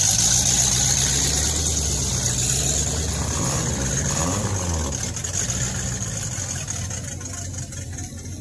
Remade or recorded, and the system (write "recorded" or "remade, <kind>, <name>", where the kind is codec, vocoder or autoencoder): recorded